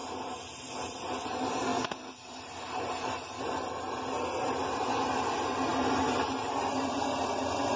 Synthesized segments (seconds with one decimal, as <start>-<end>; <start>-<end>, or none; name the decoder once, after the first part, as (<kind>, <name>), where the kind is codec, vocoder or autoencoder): none